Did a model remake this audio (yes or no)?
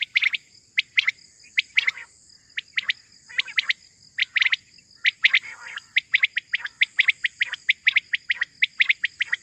no